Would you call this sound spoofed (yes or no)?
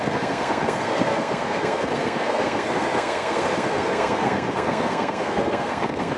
yes